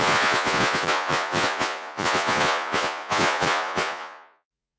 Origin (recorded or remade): remade